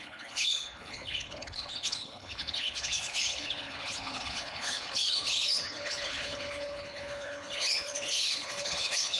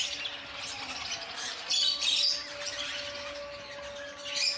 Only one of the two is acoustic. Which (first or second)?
second